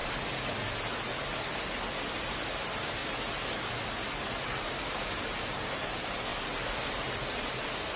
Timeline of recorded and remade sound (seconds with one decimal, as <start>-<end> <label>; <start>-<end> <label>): 0.0-2.1 recorded; 2.1-3.0 remade; 3.0-4.1 recorded; 4.1-6.3 remade; 6.3-7.3 recorded; 7.3-8.0 remade